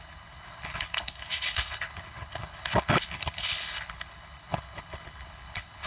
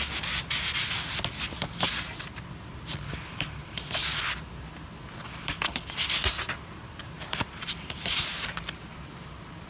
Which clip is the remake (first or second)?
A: first